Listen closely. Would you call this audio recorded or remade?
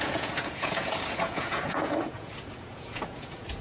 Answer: remade